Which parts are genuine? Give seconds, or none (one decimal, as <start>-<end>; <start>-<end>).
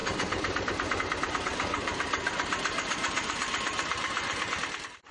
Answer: none